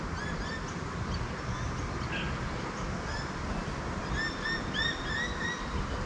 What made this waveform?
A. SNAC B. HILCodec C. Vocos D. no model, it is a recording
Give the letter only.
D